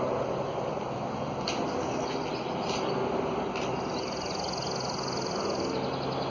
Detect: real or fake real